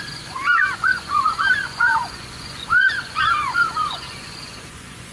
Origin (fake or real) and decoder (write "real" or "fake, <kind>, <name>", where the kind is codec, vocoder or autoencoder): fake, vocoder, Vocos